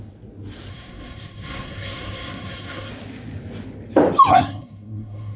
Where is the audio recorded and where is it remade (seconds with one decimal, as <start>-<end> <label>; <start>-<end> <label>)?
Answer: 0.0-0.7 recorded; 0.7-2.9 remade; 2.9-4.3 recorded; 4.3-5.4 remade